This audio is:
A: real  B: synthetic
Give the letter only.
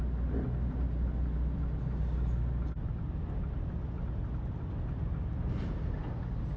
A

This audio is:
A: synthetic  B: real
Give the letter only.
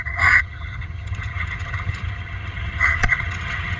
A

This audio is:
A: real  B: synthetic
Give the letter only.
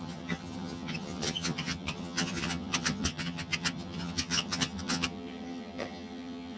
B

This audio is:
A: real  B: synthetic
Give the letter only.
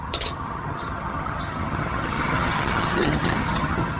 B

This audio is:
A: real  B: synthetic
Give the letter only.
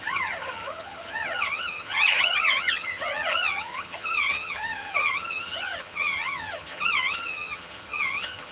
B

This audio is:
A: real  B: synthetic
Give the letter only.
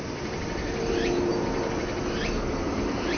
A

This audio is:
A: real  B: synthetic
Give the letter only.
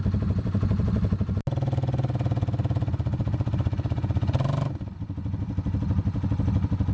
A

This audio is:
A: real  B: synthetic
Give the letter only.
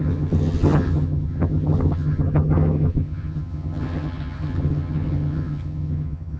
B